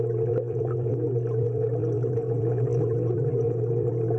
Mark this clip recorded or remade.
recorded